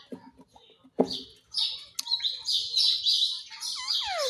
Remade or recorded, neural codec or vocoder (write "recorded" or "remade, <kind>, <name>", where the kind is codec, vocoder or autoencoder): recorded